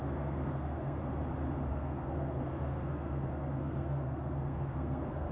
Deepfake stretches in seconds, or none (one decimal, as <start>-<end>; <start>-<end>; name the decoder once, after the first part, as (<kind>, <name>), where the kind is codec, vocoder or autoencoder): 0.0-1.0 (codec, SNAC); 1.7-5.3